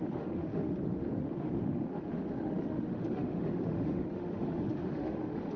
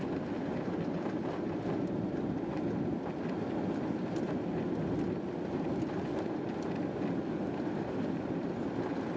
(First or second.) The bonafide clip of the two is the second